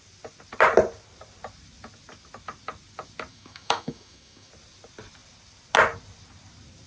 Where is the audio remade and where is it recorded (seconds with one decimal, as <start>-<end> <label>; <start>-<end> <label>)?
0.0-3.3 recorded; 3.3-4.5 remade; 4.5-6.9 recorded